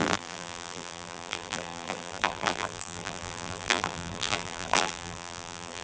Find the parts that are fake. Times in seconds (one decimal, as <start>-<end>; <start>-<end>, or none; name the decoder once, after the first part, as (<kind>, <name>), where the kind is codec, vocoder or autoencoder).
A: 0.0-5.8 (vocoder, BigVGAN v2)